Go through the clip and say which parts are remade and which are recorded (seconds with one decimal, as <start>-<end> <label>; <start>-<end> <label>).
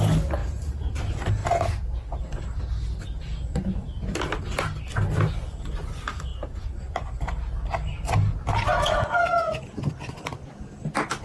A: 0.0-0.4 recorded; 0.4-0.9 remade; 0.9-6.3 recorded; 6.3-6.9 remade; 6.9-11.2 recorded